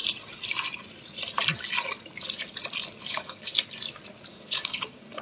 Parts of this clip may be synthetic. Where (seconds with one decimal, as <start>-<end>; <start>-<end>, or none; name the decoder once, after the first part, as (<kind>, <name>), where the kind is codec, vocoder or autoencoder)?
3.1-3.5 (codec, DAC); 4.3-5.2